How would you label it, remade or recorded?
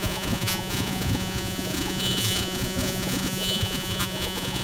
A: remade